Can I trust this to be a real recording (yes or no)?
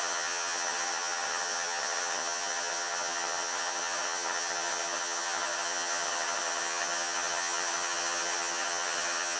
no